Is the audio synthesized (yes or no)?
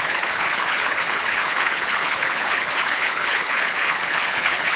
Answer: yes